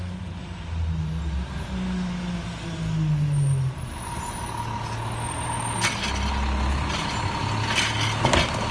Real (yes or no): yes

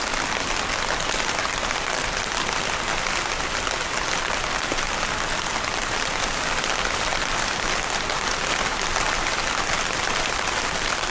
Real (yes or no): yes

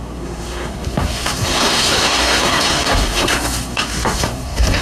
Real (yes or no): no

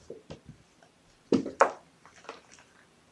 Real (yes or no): no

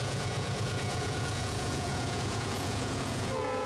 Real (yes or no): no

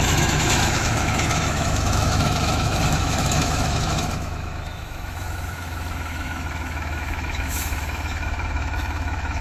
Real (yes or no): no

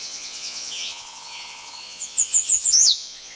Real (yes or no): no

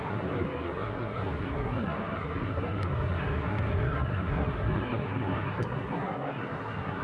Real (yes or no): no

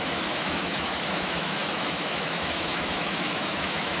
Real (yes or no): no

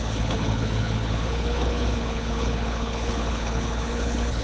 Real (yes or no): no